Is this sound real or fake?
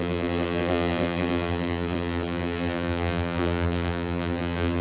fake